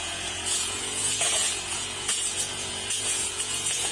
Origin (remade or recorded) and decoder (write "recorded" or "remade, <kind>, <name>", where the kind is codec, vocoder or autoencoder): remade, vocoder, Vocos